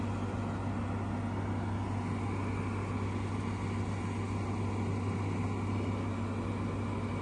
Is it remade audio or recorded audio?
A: recorded